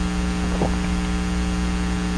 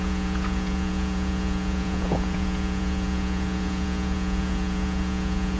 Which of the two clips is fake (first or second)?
second